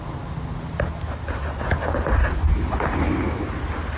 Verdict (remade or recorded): recorded